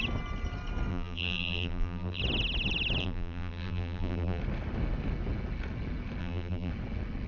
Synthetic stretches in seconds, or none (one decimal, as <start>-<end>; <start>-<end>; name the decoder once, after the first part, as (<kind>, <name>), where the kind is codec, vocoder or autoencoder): 0.9-2.2 (vocoder, BigVGAN v2); 3.0-4.4; 6.2-6.7